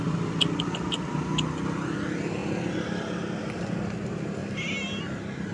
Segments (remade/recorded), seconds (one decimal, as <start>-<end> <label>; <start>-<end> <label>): 0.0-5.5 recorded